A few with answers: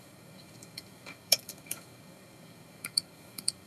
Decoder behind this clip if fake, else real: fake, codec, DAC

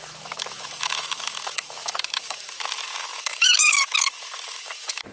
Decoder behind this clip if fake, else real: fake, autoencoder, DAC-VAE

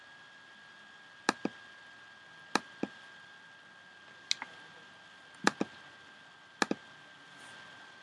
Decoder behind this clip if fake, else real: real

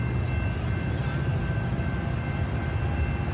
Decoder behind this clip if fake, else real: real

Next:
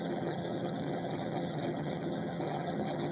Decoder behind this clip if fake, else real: fake, vocoder, HiFi-GAN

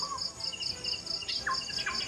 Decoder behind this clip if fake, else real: real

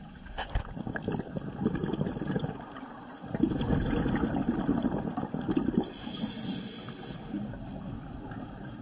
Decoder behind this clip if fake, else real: real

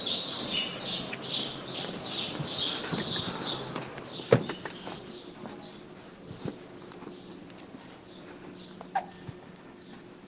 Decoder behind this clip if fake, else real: real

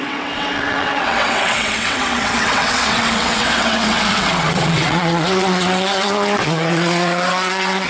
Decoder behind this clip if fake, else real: fake, vocoder, WaveNeXt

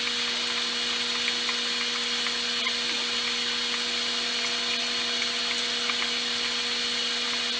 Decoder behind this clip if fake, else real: real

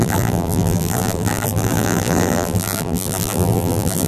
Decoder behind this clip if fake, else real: fake, vocoder, BigVGAN v2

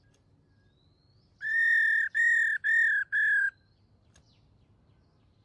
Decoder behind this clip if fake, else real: real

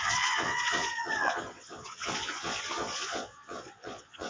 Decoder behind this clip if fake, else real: fake, vocoder, Vocos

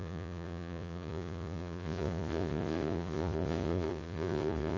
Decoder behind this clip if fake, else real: fake, vocoder, Vocos